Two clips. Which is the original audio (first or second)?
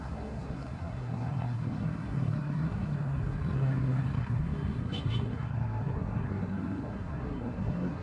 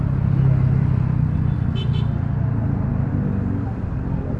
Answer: second